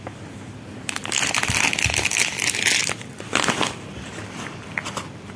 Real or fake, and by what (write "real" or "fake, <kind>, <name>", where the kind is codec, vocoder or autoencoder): real